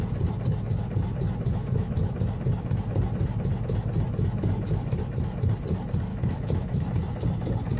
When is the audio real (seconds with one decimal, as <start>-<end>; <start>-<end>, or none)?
0.0-1.5; 2.1-6.1; 6.9-7.8